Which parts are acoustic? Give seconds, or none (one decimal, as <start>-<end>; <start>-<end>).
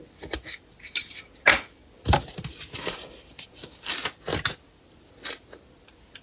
0.0-6.2